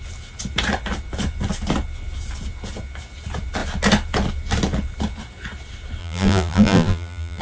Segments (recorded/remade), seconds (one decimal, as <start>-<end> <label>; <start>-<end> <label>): 0.0-6.0 recorded; 6.0-7.4 remade